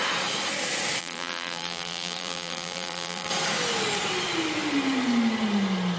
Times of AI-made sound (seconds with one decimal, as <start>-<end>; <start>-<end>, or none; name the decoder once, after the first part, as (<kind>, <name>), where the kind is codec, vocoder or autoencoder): 1.0-3.3 (vocoder, BigVGAN v2)